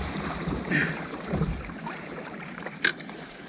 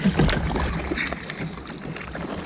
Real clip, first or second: second